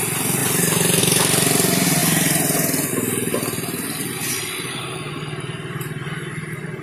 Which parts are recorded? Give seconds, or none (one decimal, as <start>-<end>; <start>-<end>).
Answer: 0.0-0.4; 1.0-6.8